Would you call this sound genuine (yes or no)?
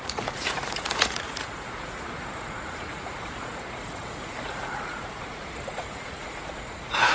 no